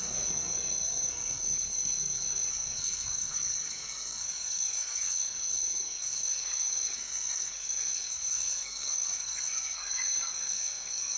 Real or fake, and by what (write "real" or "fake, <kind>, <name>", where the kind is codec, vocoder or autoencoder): fake, codec, SNAC